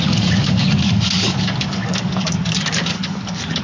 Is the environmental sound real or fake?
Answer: fake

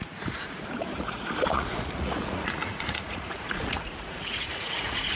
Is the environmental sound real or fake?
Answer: fake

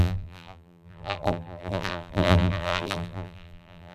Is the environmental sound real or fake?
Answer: fake